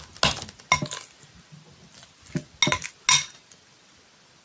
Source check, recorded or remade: recorded